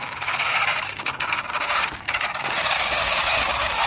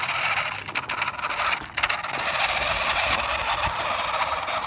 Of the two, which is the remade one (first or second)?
first